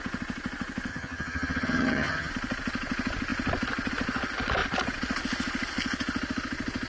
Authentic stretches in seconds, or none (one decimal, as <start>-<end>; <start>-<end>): 0.0-0.9; 2.3-6.9